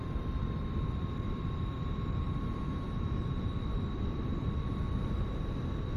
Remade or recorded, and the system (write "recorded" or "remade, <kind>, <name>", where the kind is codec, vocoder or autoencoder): recorded